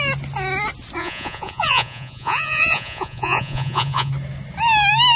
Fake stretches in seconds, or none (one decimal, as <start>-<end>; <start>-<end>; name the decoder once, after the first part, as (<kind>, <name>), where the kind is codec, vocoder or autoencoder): 1.0-4.1 (vocoder, Vocos)